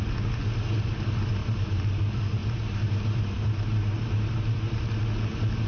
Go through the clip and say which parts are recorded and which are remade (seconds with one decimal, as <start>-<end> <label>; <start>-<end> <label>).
0.0-1.4 recorded; 1.4-2.0 remade; 2.0-2.4 recorded; 2.4-4.9 remade; 4.9-5.7 recorded